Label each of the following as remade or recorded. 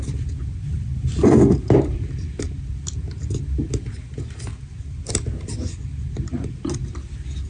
recorded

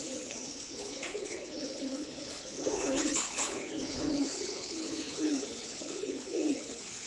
remade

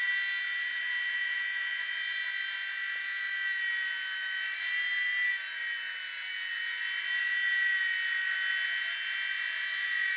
recorded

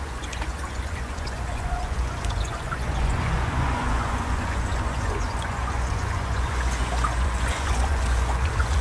remade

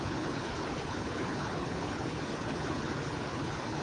remade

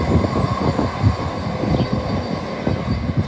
recorded